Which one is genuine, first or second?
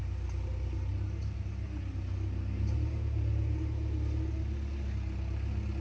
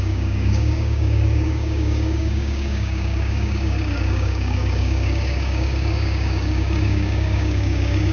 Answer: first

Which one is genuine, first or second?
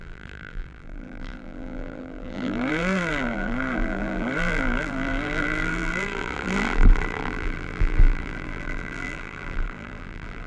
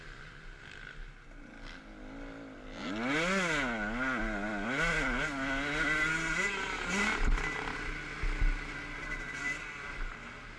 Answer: second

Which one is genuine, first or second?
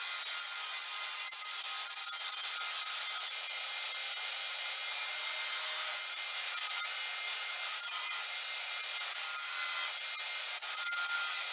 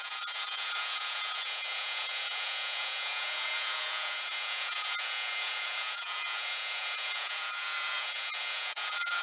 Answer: first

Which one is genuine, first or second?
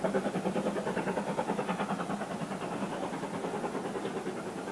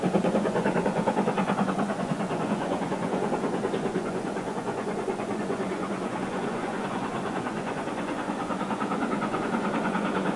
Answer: first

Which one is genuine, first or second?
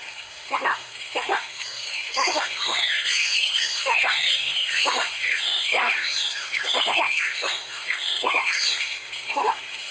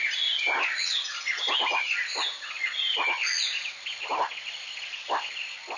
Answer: second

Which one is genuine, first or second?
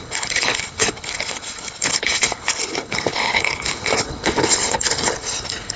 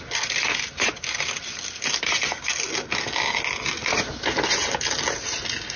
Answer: second